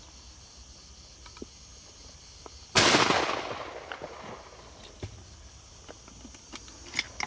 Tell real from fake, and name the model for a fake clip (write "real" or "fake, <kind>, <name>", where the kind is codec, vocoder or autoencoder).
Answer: real